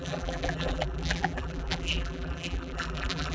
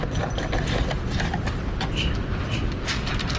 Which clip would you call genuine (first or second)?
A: second